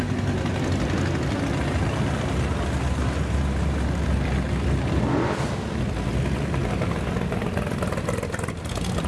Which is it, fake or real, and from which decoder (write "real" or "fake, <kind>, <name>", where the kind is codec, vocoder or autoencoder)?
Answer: real